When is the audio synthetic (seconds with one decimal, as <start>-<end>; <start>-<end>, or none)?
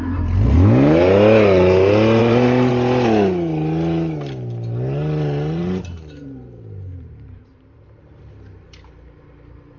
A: 2.2-2.7; 5.6-8.2